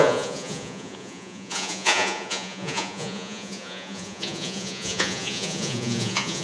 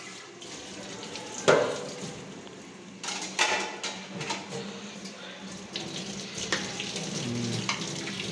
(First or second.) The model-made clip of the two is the first